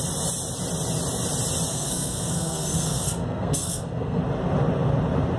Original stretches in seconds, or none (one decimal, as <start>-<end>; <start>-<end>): 0.0-1.7; 4.2-5.4